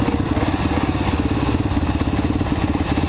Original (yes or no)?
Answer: yes